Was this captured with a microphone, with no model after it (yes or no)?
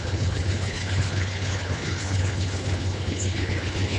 no